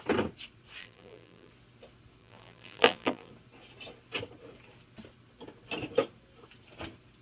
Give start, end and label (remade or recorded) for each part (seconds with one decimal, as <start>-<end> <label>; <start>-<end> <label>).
0.0-0.8 recorded; 0.8-1.5 remade; 1.5-2.2 recorded; 2.2-3.3 remade; 3.3-7.2 recorded